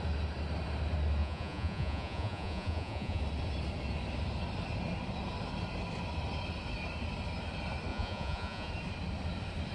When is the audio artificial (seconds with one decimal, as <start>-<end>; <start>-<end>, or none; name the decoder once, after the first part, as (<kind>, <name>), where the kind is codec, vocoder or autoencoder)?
1.2-3.2 (vocoder, Vocos); 7.9-8.7